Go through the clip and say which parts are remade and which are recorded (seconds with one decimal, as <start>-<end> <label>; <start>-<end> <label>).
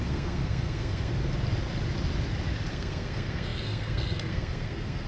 0.0-1.1 remade; 1.1-2.7 recorded; 2.7-5.1 remade